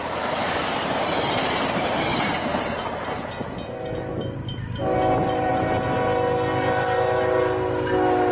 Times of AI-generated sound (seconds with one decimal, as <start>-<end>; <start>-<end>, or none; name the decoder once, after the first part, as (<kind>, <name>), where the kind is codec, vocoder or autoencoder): 0.0-2.5 (vocoder, BigVGAN v2); 4.2-5.5

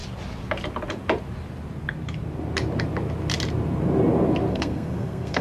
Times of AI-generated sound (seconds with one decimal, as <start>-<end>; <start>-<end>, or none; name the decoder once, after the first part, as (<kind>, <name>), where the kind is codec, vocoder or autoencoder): 4.5-5.4 (codec, SNAC)

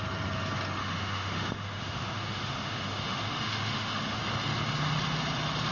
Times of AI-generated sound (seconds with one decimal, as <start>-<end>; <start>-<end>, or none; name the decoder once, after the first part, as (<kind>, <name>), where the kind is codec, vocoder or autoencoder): 0.8-4.2 (autoencoder, DAC-VAE)

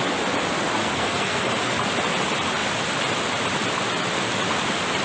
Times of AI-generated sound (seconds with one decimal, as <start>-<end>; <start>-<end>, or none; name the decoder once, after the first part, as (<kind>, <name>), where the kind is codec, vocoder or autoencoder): 0.8-1.5 (codec, SNAC)

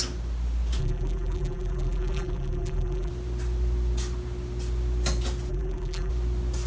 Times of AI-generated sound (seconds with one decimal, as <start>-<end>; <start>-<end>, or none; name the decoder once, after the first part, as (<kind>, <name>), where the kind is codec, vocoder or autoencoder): 0.8-3.1 (vocoder, BigVGAN v2); 5.5-6.1

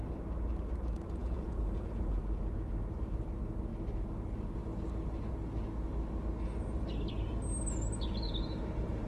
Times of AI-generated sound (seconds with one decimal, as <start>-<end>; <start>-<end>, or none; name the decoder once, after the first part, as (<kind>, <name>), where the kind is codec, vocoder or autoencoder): 1.2-2.2 (vocoder, Vocos)